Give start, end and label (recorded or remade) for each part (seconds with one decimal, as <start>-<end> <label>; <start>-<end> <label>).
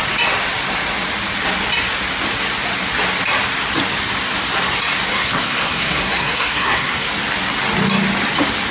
0.0-5.1 recorded; 5.1-7.1 remade; 7.1-8.7 recorded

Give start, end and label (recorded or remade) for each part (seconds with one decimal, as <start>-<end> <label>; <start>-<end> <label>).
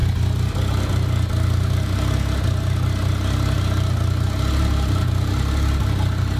0.0-6.4 recorded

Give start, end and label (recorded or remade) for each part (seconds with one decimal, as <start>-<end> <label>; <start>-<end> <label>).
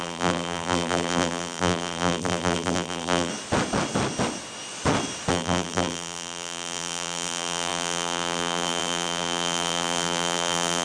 0.0-3.3 remade; 3.3-5.3 recorded; 5.3-10.8 remade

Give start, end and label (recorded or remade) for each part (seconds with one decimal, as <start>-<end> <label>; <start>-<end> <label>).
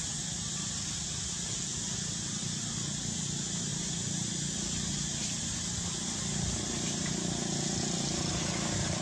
0.0-9.0 recorded